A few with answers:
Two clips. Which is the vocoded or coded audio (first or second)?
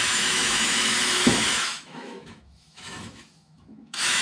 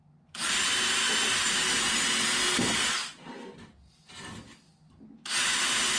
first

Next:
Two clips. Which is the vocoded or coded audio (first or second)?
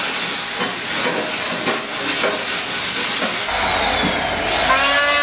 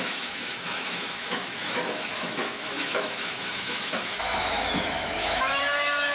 second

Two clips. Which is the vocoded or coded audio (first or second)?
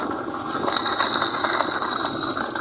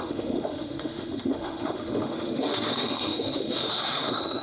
second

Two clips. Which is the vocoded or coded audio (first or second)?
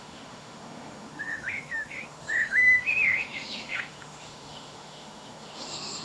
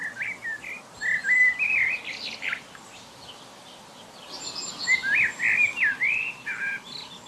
first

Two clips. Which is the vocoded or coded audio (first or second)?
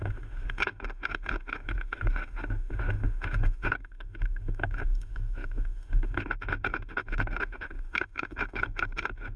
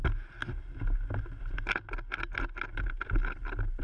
first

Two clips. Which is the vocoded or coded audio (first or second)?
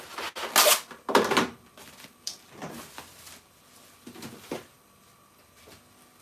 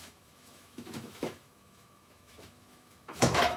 second